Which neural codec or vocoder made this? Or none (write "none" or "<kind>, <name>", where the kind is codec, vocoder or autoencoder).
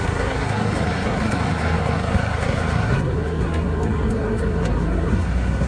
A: codec, SNAC